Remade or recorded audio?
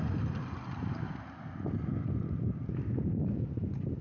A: recorded